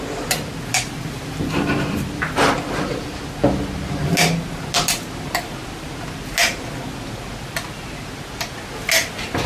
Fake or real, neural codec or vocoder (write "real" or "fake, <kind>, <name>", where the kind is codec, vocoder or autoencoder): real